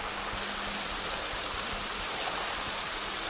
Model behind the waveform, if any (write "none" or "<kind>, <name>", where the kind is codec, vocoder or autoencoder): none